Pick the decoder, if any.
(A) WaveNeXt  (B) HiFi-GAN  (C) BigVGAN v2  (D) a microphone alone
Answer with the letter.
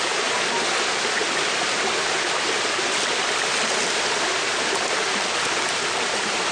D